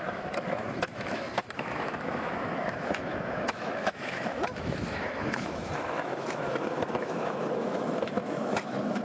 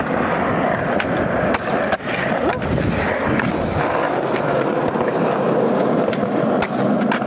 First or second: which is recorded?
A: second